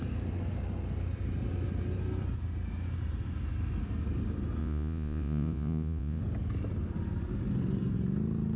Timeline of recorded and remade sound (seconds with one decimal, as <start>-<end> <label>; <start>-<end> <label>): 0.0-4.6 recorded; 4.6-6.2 remade; 6.2-8.6 recorded